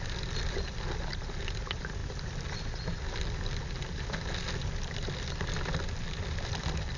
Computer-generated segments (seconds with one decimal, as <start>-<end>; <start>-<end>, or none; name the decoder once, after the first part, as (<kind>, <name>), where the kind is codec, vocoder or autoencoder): none